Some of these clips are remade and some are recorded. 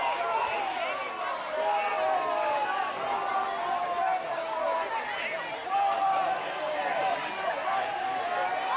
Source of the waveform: recorded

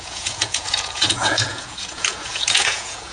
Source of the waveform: remade